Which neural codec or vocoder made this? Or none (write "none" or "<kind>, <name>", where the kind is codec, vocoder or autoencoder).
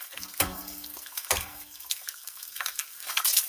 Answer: codec, SNAC